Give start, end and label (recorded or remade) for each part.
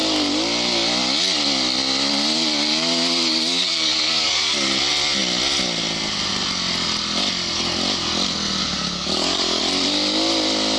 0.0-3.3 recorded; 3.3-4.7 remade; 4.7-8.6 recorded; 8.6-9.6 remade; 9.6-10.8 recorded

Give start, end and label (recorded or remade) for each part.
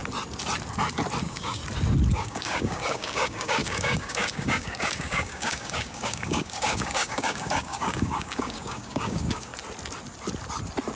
0.0-1.2 recorded; 1.2-1.6 remade; 1.6-2.1 recorded; 2.1-9.5 remade; 9.5-11.0 recorded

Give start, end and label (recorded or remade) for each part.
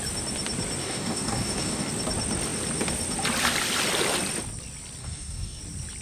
0.0-0.8 recorded; 0.8-1.9 remade; 1.9-5.0 recorded; 5.0-5.6 remade; 5.6-6.0 recorded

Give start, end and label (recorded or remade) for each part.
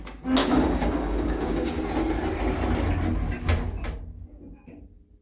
0.0-0.4 recorded; 0.4-1.8 remade; 1.8-5.2 recorded